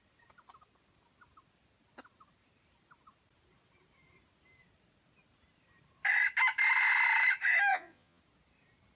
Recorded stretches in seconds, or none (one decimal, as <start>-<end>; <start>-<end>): 0.0-7.7; 8.2-9.0